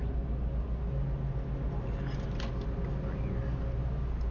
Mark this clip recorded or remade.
recorded